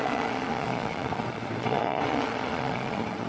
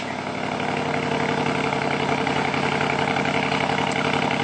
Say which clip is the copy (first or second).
first